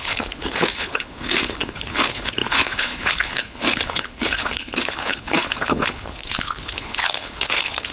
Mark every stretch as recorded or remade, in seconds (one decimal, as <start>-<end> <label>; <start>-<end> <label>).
0.0-7.9 remade